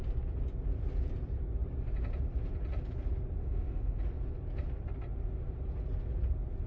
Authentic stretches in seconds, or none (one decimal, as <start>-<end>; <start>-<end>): 0.0-3.4; 4.0-6.7